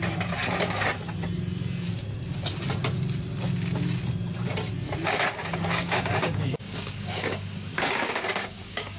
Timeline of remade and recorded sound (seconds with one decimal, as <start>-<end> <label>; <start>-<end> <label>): 0.0-5.4 recorded; 5.4-9.0 remade